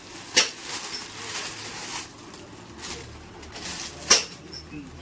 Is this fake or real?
real